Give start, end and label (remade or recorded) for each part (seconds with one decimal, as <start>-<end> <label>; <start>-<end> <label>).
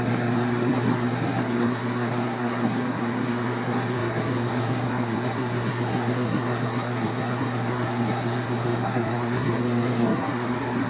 0.0-10.9 remade